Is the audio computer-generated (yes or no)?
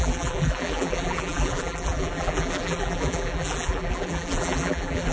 yes